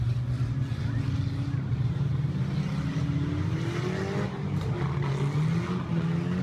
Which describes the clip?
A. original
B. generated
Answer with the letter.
A